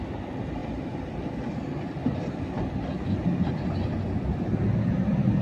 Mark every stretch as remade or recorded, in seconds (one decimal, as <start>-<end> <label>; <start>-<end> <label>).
0.0-5.4 recorded